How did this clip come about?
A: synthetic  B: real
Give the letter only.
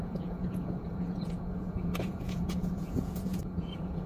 A